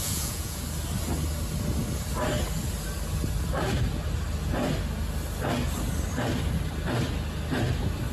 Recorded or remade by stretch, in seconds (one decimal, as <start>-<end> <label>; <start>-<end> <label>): 0.0-0.6 remade; 0.6-8.1 recorded